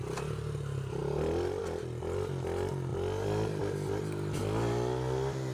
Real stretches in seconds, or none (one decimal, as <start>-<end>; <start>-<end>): 0.0-5.5